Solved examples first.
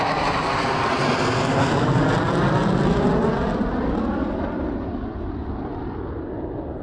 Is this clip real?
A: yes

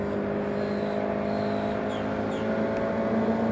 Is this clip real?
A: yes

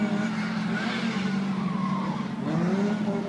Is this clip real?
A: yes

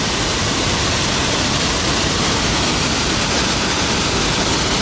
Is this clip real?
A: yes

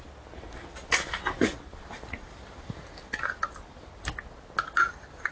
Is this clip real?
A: yes